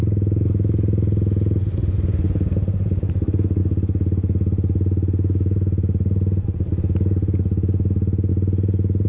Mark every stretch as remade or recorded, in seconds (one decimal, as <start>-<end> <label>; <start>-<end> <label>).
0.0-9.1 recorded